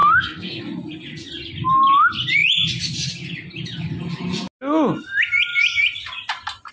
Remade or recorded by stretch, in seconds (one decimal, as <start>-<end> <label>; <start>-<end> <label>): 0.0-0.6 remade; 0.6-6.7 recorded